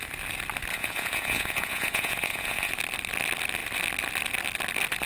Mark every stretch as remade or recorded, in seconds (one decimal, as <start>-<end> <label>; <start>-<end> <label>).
0.0-0.7 recorded; 0.7-2.7 remade; 2.7-5.1 recorded